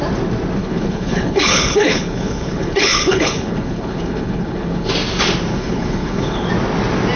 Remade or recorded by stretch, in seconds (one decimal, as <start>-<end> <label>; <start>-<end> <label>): 0.0-0.6 recorded; 0.6-4.9 remade; 4.9-5.5 recorded; 5.5-6.5 remade; 6.5-7.2 recorded